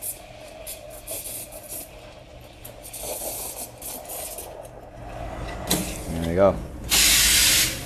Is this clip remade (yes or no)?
no